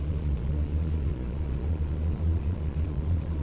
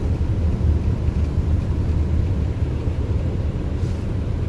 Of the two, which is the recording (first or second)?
second